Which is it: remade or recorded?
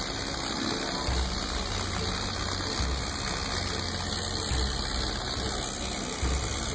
recorded